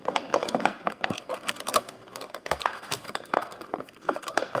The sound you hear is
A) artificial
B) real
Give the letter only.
A